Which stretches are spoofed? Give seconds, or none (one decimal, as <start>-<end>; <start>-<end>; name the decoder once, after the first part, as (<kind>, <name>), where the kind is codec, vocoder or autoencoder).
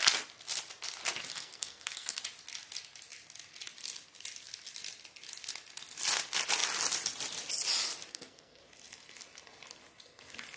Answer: 1.3-2.2 (codec, SNAC); 8.1-8.6